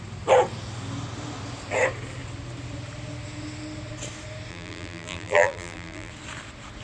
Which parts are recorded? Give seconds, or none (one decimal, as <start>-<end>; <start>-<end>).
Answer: 0.0-4.5; 6.1-6.8